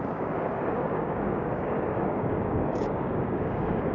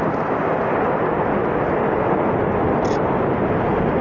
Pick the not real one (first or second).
first